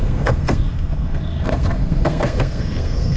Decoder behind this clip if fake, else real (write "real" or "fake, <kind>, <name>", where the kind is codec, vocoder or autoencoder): fake, codec, SNAC